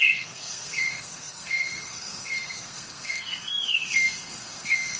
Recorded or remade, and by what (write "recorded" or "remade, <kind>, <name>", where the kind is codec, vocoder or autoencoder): remade, codec, SNAC